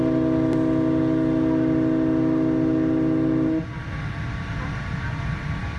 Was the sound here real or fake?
real